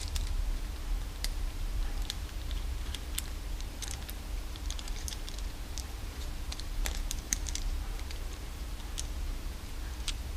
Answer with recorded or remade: remade